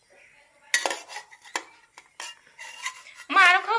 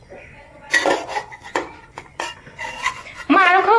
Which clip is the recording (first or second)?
first